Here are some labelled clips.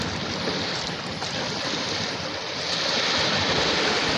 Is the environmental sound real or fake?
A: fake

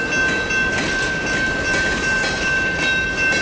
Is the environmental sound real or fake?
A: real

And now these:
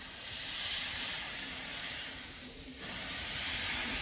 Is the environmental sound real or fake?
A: fake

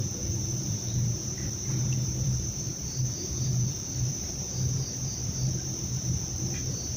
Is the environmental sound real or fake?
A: fake